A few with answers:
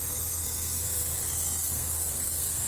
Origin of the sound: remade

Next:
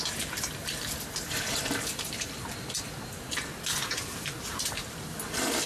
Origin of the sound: remade